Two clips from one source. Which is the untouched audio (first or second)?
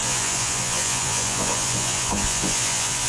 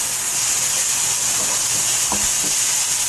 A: second